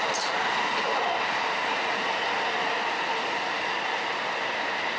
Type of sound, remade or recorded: recorded